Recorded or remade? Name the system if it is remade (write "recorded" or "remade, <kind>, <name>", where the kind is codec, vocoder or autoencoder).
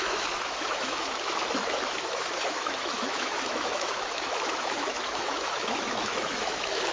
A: remade, autoencoder, DAC-VAE